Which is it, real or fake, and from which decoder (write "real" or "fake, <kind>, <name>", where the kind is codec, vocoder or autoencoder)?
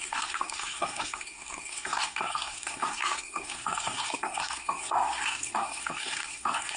fake, codec, SNAC